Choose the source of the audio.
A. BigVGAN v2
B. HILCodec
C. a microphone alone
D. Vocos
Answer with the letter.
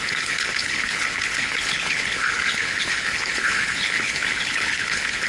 B